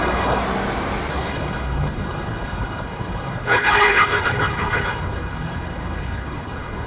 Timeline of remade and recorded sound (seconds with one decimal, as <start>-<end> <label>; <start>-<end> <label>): 0.0-0.4 remade; 0.4-1.1 recorded; 1.1-6.9 remade